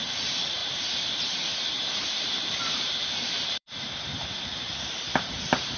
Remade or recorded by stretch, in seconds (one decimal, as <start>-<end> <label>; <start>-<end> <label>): 0.0-4.5 remade; 4.5-5.2 recorded; 5.2-5.8 remade